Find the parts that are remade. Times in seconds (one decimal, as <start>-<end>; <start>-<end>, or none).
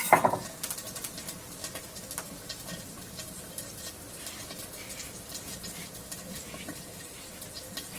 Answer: none